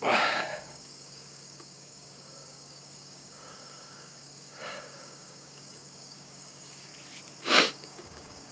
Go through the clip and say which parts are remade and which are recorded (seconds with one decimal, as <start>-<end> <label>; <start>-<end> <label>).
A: 0.0-6.9 remade; 6.9-7.4 recorded; 7.4-8.5 remade